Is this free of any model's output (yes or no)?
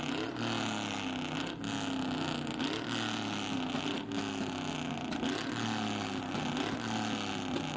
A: yes